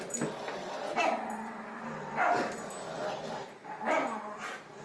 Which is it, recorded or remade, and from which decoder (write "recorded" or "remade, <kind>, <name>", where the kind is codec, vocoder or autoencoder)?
recorded